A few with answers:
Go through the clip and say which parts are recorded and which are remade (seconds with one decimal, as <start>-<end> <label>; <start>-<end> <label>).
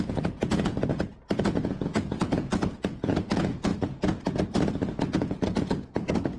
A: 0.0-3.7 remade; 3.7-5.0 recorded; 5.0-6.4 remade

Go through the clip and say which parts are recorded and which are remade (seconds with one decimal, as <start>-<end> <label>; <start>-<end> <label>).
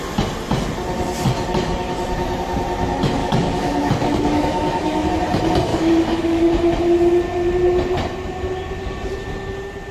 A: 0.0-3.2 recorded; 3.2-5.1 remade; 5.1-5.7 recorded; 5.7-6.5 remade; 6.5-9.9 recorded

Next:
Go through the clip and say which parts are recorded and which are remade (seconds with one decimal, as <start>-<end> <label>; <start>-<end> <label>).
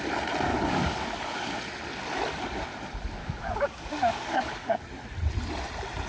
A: 0.0-0.5 recorded; 0.5-1.6 remade; 1.6-3.2 recorded; 3.2-4.8 remade; 4.8-6.1 recorded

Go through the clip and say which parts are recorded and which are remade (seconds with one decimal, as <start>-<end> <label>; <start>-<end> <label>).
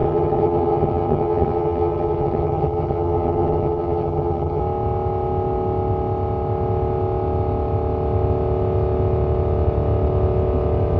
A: 0.0-4.6 remade; 4.6-11.0 recorded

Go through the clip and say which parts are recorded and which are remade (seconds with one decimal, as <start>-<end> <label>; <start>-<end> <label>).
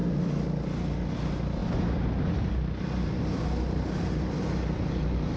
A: 0.0-5.4 recorded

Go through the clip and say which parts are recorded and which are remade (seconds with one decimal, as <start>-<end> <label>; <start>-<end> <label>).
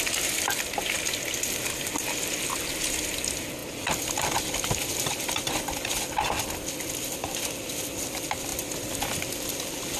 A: 0.0-8.5 recorded; 8.5-9.2 remade; 9.2-10.0 recorded